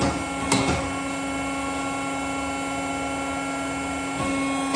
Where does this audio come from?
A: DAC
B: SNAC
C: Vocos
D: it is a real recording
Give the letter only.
D